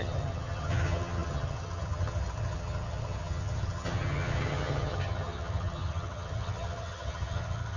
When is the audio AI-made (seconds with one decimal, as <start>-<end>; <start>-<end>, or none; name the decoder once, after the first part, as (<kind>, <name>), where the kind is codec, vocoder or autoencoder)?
0.0-7.8 (vocoder, HiFi-GAN)